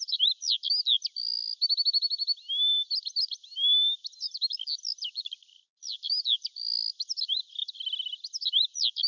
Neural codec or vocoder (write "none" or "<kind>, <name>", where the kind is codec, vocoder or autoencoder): none